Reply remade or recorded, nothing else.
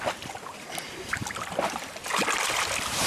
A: recorded